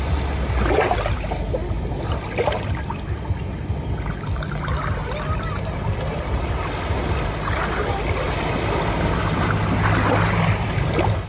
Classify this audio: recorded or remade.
recorded